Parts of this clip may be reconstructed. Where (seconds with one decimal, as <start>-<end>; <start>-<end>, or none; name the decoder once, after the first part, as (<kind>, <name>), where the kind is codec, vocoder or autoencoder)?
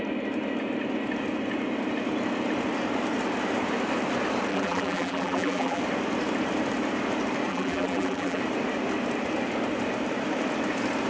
4.5-5.8 (vocoder, BigVGAN v2); 7.5-8.4